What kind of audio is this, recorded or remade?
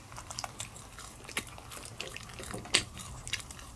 recorded